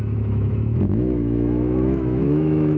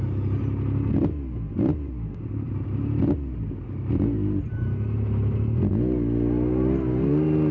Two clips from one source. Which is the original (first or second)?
second